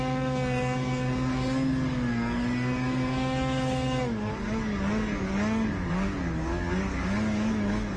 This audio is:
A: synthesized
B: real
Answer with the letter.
A